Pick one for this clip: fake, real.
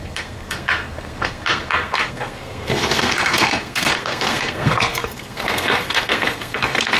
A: fake